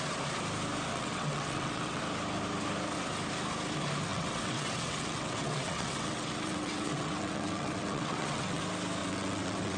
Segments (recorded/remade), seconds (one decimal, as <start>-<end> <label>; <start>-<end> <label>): 0.0-0.9 recorded; 0.9-2.0 remade; 2.0-4.1 recorded; 4.1-8.6 remade; 8.6-9.0 recorded; 9.0-9.8 remade